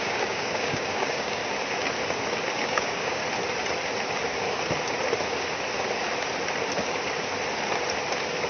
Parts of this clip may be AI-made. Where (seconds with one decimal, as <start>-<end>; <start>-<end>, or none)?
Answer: 0.0-1.4; 2.5-3.2